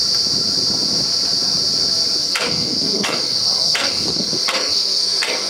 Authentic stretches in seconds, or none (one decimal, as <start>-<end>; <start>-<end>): 0.0-2.2